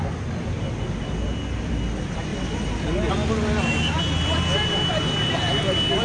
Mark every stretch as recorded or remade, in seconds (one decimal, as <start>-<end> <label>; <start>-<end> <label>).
0.0-6.0 recorded